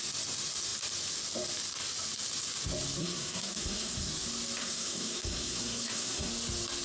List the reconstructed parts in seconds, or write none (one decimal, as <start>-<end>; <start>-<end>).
3.0-4.1; 4.6-6.3